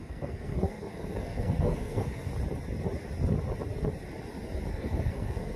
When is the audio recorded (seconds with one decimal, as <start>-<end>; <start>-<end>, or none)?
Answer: 2.3-4.7